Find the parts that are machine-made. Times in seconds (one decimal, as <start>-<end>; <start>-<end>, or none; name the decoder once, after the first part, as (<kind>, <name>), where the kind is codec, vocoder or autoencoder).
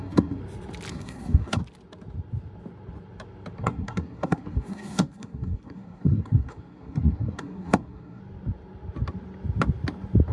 0.0-0.4 (codec, SNAC); 0.9-1.6; 3.6-8.2